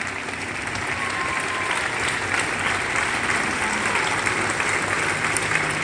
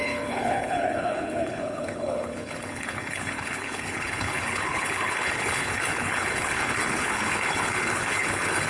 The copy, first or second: second